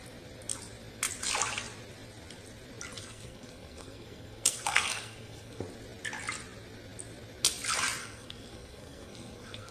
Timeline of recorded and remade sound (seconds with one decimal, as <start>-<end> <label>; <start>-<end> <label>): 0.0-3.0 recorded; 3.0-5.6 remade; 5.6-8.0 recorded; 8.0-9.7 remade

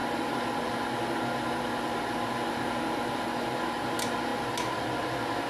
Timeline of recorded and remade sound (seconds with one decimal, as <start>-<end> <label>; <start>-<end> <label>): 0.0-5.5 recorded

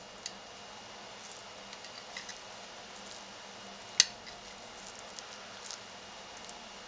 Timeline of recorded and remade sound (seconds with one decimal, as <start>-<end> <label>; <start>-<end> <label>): 0.0-6.9 recorded

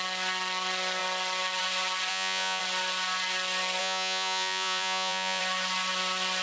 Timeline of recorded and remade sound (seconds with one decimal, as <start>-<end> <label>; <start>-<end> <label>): 0.0-2.1 recorded; 2.1-2.6 remade; 2.6-3.8 recorded; 3.8-5.4 remade; 5.4-6.4 recorded

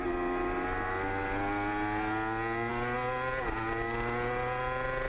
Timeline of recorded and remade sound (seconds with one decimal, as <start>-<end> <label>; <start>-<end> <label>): 0.0-5.1 recorded

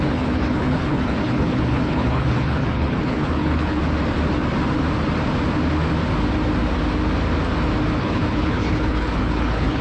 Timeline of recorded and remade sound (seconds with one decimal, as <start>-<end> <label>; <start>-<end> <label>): 0.0-3.8 remade; 3.8-8.0 recorded; 8.0-9.8 remade